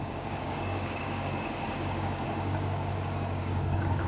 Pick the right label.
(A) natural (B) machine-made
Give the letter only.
B